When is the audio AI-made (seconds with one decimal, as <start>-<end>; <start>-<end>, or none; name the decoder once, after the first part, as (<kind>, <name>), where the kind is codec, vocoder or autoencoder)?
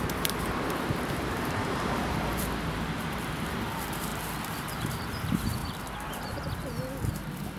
0.0-4.1 (vocoder, BigVGAN v2); 4.7-5.6